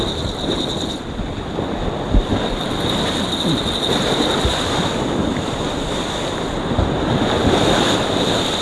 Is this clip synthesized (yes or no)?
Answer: no